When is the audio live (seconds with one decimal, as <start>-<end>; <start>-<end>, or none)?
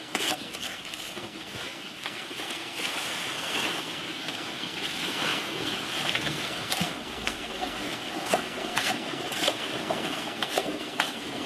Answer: none